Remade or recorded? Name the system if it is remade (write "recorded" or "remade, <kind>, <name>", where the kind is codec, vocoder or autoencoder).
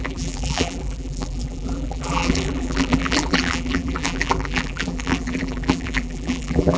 remade, vocoder, BigVGAN v2